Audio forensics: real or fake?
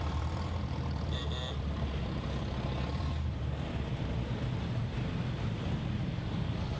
fake